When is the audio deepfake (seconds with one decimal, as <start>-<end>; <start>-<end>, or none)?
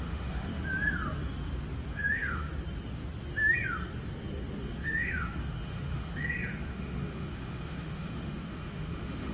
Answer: 0.0-0.5; 1.9-2.5; 4.6-9.3